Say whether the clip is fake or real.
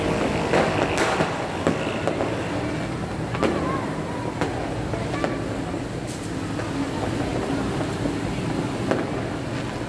real